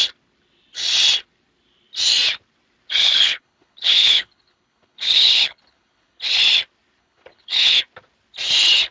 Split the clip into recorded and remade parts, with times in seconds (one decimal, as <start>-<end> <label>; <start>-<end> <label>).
0.0-3.0 recorded; 3.0-6.2 remade; 6.2-7.0 recorded; 7.0-7.8 remade; 7.8-8.9 recorded

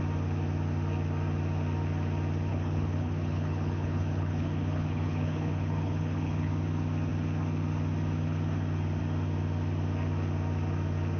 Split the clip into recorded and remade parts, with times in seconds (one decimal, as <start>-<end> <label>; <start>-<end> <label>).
0.0-2.5 recorded; 2.5-6.5 remade; 6.5-11.2 recorded